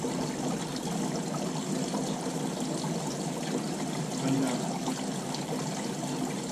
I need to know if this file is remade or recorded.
recorded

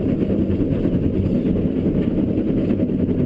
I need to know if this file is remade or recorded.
recorded